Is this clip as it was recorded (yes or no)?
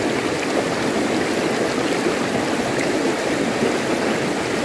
yes